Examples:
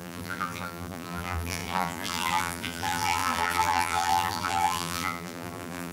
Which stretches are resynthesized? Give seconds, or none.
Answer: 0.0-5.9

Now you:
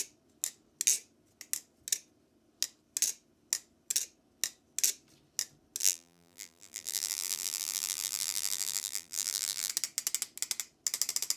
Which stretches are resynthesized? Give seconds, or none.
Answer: 5.8-9.7

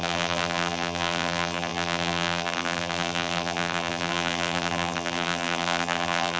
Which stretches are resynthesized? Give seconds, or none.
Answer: 0.0-6.4

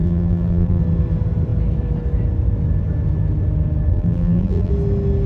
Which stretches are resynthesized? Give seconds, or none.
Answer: 0.0-0.8; 3.9-4.7

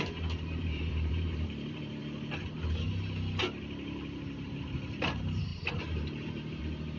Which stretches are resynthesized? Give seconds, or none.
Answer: 0.0-2.0; 3.6-7.0